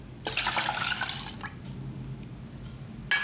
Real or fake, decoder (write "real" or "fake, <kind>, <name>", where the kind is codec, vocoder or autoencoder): real